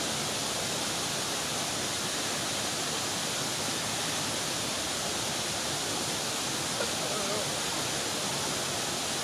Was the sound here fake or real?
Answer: real